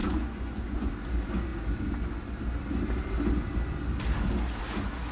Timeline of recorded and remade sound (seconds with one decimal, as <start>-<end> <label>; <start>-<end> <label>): 0.0-0.9 remade; 0.9-5.1 recorded